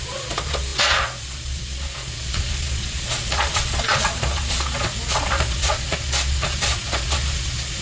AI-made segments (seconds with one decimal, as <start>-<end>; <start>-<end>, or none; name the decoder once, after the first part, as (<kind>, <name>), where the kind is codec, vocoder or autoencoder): 0.0-7.8 (vocoder, Vocos)